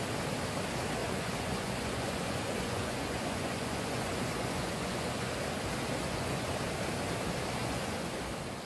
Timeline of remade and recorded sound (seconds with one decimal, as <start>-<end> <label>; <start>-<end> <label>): 0.0-1.0 recorded; 1.0-5.3 remade; 5.3-6.0 recorded; 6.0-6.5 remade; 6.5-7.6 recorded; 7.6-8.2 remade; 8.2-8.7 recorded